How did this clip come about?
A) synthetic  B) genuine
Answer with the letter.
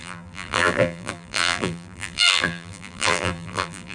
A